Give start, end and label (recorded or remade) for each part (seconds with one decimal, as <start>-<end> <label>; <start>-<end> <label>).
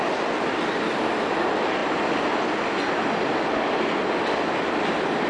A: 0.0-5.3 recorded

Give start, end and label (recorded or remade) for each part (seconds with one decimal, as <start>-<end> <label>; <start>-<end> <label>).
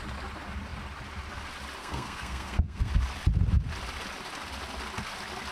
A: 0.0-1.8 recorded; 1.8-2.9 remade; 2.9-5.5 recorded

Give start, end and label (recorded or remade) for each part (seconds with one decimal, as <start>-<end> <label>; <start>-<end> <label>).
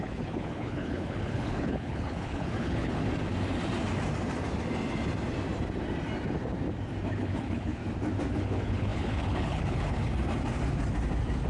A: 0.0-3.0 remade; 3.0-7.1 recorded; 7.1-7.8 remade; 7.8-8.3 recorded; 8.3-10.1 remade; 10.1-11.5 recorded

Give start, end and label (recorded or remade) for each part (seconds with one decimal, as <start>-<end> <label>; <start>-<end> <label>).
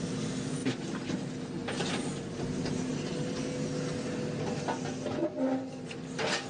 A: 0.0-6.5 recorded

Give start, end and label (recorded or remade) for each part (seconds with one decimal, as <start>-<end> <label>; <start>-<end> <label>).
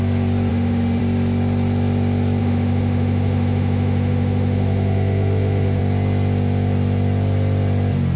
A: 0.0-0.5 recorded; 0.5-1.0 remade; 1.0-2.4 recorded; 2.4-5.8 remade; 5.8-8.2 recorded